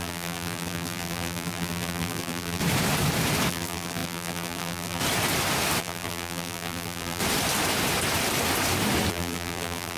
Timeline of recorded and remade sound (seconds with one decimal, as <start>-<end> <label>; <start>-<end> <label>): 0.0-2.6 remade; 2.6-3.5 recorded; 3.5-5.0 remade; 5.0-5.8 recorded; 5.8-7.2 remade; 7.2-9.1 recorded; 9.1-10.0 remade